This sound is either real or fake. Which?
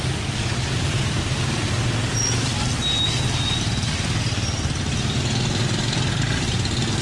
real